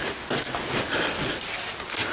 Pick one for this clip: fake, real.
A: real